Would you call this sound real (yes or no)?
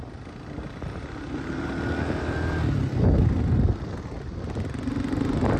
yes